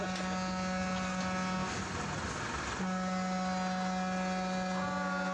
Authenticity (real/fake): real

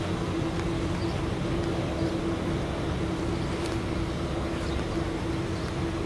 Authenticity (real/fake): real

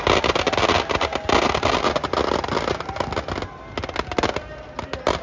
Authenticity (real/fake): real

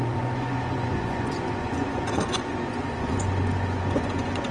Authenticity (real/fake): fake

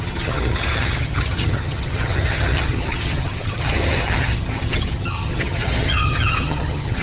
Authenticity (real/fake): fake